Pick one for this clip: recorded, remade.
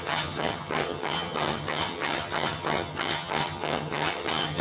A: remade